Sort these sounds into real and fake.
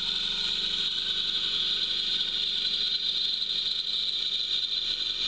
real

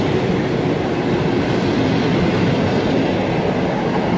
real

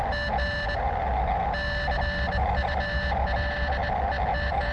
real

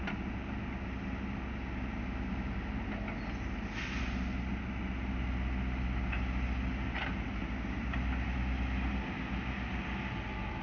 real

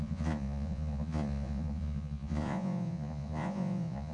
fake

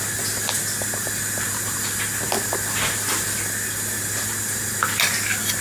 real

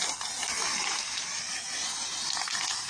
real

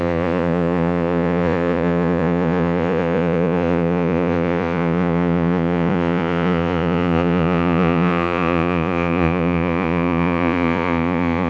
fake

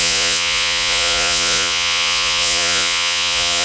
fake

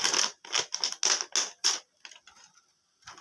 real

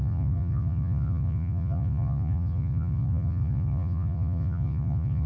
fake